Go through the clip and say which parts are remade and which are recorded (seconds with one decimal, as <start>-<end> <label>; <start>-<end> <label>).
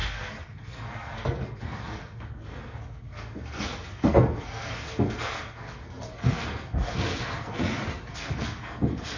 0.0-7.6 remade; 7.6-8.1 recorded; 8.1-9.2 remade